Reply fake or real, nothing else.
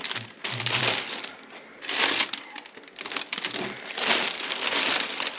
real